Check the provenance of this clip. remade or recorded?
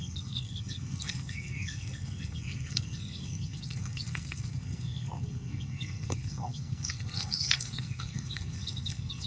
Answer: remade